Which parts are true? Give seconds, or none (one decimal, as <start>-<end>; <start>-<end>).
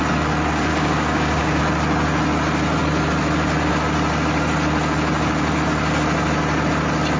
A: 0.0-0.7; 1.6-7.2